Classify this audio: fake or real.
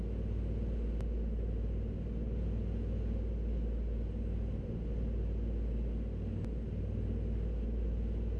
real